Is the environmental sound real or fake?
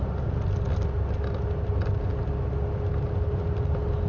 real